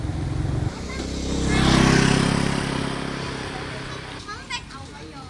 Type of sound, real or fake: real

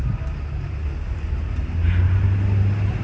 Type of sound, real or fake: real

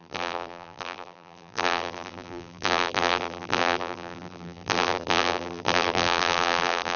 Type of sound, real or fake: fake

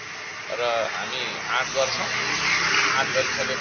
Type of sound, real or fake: real